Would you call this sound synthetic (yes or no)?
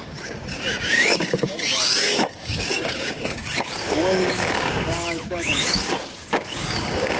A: yes